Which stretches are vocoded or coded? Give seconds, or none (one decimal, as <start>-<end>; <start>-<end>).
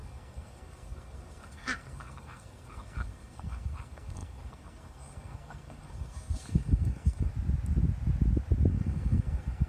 0.0-7.3; 8.7-9.7